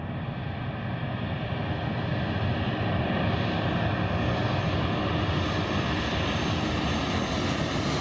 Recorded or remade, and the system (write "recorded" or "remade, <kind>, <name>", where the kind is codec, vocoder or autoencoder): recorded